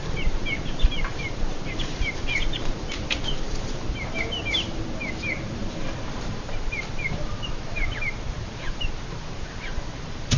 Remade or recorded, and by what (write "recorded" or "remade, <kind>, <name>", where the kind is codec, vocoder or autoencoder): remade, vocoder, BigVGAN v2